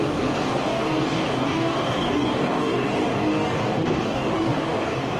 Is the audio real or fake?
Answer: fake